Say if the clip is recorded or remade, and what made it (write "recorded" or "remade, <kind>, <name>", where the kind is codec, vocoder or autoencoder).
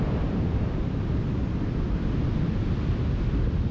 recorded